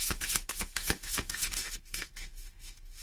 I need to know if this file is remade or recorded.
remade